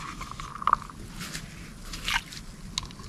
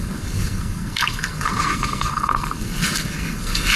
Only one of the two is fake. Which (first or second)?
second